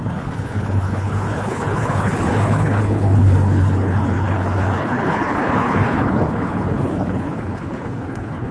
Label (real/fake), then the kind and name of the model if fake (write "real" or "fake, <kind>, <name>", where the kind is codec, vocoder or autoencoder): fake, codec, HILCodec